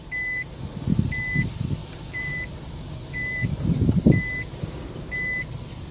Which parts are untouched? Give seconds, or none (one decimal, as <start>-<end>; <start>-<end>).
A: 0.0-1.8; 3.8-5.9